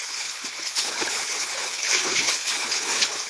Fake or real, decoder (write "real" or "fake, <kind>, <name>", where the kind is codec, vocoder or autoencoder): fake, codec, HILCodec